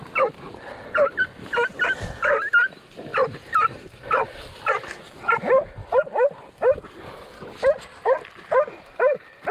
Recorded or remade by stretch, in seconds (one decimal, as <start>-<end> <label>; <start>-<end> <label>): 0.0-9.5 recorded